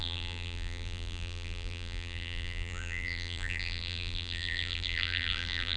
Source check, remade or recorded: remade